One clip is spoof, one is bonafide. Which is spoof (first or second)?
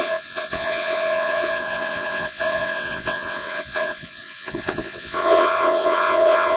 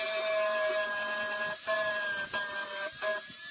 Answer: first